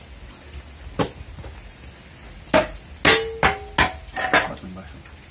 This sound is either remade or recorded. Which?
recorded